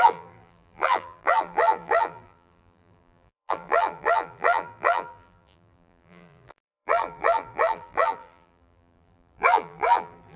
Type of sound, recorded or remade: remade